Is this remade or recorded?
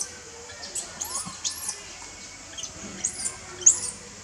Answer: recorded